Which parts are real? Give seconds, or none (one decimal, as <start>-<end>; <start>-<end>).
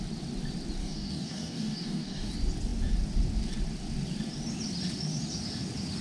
0.0-0.8; 2.3-6.0